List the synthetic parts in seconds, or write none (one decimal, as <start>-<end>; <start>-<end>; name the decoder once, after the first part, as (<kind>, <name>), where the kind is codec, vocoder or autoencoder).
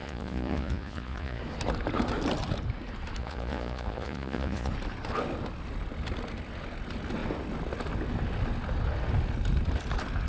0.0-1.4 (vocoder, Vocos); 3.2-4.7